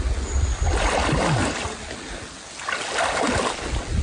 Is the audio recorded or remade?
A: recorded